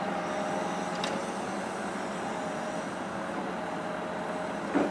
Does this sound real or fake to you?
real